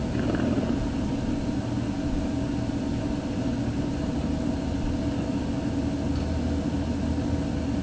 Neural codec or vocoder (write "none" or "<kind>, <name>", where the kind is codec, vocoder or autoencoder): none